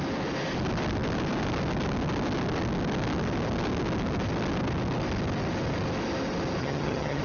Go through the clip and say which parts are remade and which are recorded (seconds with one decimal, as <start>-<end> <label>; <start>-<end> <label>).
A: 0.0-6.6 recorded; 6.6-7.2 remade

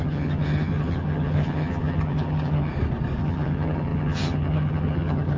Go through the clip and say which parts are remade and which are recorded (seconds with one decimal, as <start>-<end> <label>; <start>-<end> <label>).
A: 0.0-2.7 remade; 2.7-3.2 recorded; 3.2-5.4 remade